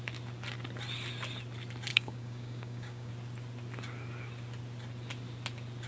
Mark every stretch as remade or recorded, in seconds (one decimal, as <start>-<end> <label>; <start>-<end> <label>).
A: 0.0-1.9 recorded; 1.9-3.1 remade; 3.1-5.9 recorded